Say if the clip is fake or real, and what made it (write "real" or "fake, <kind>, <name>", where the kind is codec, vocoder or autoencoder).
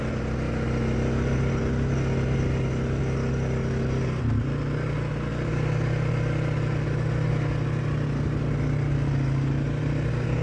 real